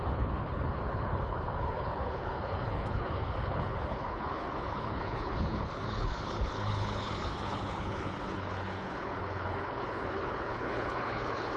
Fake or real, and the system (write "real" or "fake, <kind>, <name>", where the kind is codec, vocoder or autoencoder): fake, codec, HILCodec